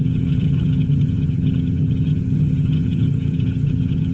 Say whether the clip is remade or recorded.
remade